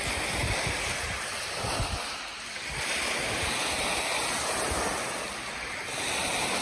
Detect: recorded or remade recorded